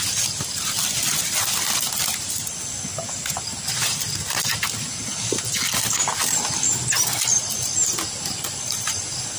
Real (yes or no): yes